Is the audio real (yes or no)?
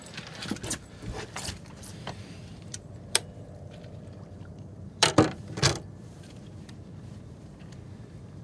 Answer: no